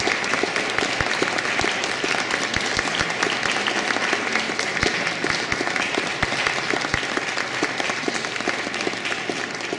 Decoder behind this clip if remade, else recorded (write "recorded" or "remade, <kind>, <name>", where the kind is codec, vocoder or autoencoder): recorded